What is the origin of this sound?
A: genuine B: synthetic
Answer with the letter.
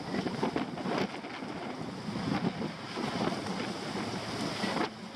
A